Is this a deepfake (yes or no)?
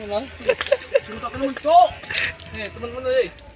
no